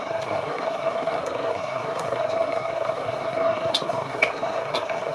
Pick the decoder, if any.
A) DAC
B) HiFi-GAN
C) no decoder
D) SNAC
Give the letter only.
D